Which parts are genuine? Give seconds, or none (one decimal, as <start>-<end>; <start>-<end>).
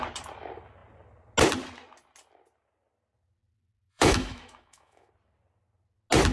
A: 0.0-3.9; 5.1-6.3